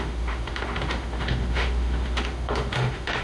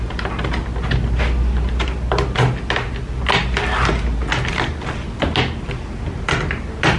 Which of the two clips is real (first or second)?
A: second